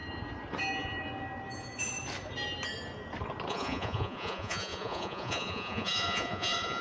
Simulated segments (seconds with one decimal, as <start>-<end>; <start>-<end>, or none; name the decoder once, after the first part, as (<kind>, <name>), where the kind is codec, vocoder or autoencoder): 3.5-6.8 (vocoder, Vocos)